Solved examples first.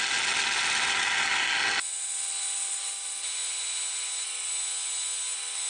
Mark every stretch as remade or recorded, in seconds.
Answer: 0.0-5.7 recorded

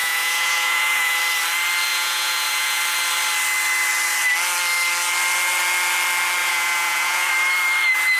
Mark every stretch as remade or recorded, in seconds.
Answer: 0.0-1.2 remade; 1.2-1.9 recorded; 1.9-2.8 remade; 2.8-6.4 recorded; 6.4-7.3 remade; 7.3-8.2 recorded